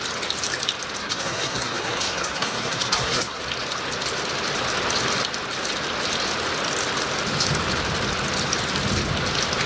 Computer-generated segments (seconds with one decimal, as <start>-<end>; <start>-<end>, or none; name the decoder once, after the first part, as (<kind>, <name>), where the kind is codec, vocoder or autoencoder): 1.0-3.4 (codec, SNAC)